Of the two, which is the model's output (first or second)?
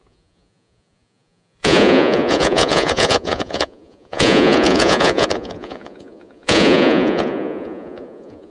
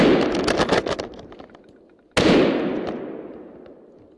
first